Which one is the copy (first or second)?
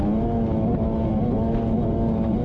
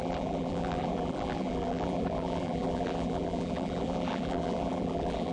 second